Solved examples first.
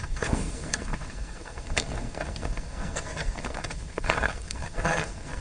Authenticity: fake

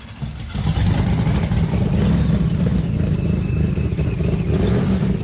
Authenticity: real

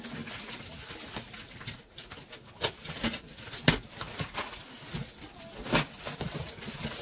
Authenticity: real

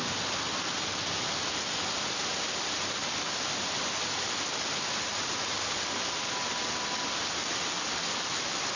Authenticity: real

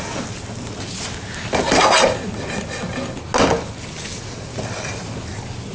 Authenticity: real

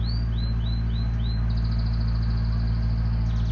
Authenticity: real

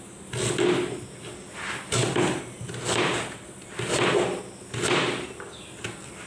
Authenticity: real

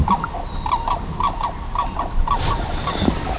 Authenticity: real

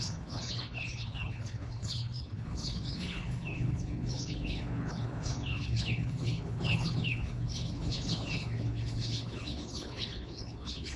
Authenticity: fake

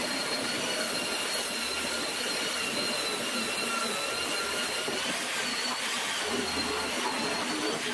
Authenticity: real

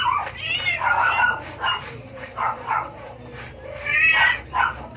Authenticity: fake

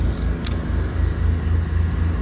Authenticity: real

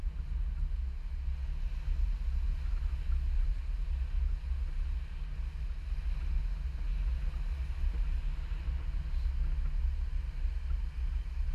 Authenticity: real